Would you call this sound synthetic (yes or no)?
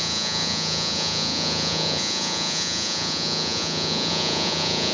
yes